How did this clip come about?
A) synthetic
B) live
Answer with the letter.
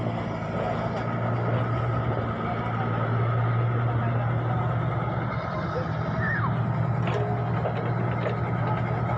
B